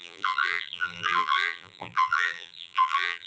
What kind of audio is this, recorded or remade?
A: remade